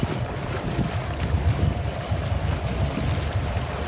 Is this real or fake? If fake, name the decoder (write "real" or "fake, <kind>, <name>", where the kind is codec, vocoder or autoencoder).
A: fake, vocoder, BigVGAN v2